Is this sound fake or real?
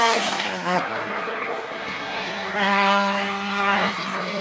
fake